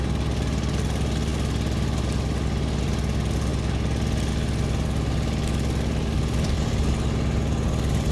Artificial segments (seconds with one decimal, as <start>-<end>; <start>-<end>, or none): none